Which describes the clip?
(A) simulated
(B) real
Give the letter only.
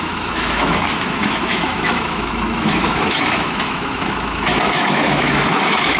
A